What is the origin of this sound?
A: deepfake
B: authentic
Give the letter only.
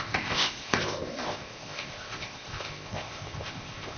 A